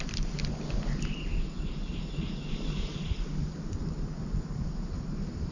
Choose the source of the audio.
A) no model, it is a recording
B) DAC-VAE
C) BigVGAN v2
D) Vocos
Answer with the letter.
A